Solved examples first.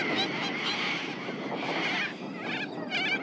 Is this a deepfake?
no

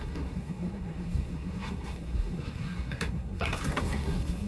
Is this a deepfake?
yes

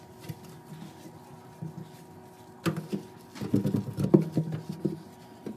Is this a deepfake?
no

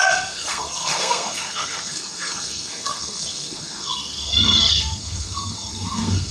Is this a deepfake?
yes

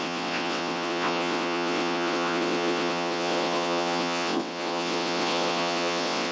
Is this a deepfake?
yes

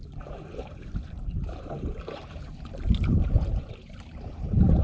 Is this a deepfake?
yes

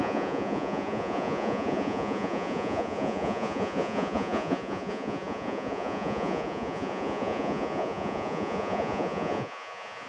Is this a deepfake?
yes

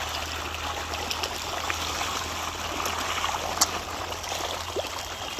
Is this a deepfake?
no